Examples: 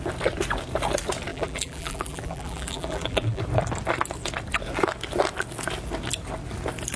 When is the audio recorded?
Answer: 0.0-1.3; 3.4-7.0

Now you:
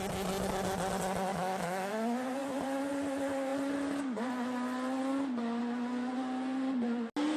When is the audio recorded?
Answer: 0.0-1.3; 1.9-7.4